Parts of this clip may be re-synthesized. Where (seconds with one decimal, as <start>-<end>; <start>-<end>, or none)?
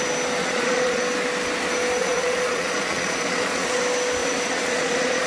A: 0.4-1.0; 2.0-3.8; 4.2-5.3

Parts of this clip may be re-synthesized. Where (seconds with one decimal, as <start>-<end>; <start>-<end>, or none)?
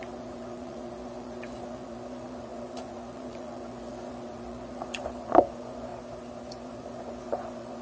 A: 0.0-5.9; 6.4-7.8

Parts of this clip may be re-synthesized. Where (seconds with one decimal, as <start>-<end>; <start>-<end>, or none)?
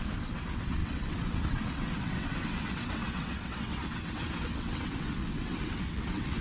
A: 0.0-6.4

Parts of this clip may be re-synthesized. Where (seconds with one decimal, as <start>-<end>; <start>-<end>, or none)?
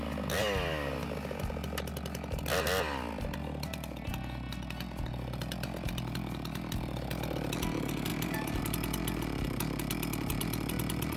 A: 8.1-8.6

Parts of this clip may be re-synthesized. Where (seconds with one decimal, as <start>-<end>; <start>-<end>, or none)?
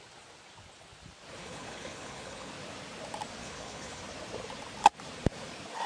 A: 1.4-2.5; 3.4-4.0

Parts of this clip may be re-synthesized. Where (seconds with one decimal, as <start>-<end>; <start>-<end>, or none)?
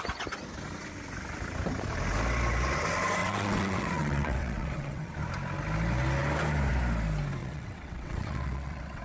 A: 3.2-5.1; 7.4-9.0